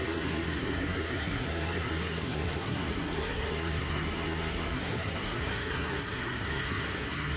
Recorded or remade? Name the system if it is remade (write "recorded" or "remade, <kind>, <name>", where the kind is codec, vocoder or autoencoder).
remade, codec, SNAC